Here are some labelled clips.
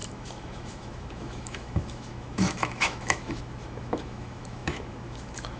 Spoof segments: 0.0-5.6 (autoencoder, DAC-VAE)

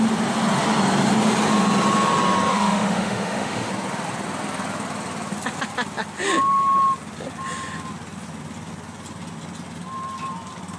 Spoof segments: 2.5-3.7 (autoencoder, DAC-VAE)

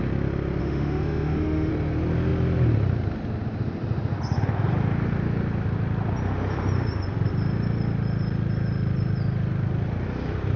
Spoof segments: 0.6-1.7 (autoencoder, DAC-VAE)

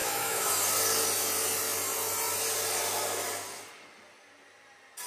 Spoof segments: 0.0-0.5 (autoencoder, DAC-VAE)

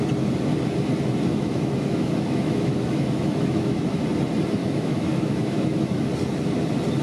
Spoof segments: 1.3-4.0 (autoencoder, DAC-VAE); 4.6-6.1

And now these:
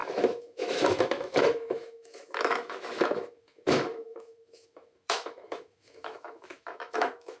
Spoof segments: 0.0-7.4 (autoencoder, DAC-VAE)